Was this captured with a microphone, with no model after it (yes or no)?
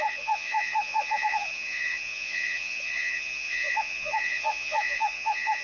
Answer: no